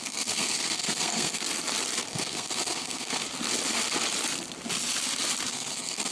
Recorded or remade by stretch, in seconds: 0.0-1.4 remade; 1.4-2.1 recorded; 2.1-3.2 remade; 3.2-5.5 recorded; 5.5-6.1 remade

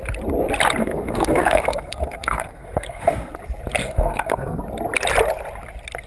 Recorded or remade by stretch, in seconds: 0.0-0.8 recorded; 0.8-3.3 remade; 3.3-3.8 recorded; 3.8-4.6 remade; 4.6-6.1 recorded

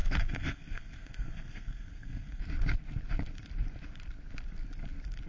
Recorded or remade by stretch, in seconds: 0.0-2.4 remade; 2.4-5.3 recorded

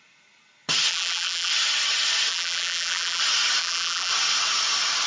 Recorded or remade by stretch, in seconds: 0.0-0.9 recorded; 0.9-1.5 remade; 1.5-2.3 recorded; 2.3-3.2 remade; 3.2-3.6 recorded; 3.6-4.1 remade; 4.1-5.1 recorded